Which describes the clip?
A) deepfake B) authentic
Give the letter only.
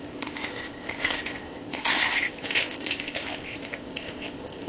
A